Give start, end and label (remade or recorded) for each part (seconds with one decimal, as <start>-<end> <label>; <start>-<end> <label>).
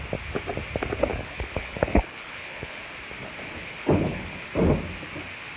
0.0-1.1 recorded; 1.1-2.8 remade; 2.8-3.6 recorded; 3.6-4.5 remade; 4.5-5.6 recorded